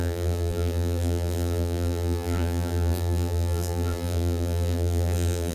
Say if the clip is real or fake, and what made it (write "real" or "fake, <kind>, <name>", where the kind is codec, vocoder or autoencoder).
fake, vocoder, BigVGAN v2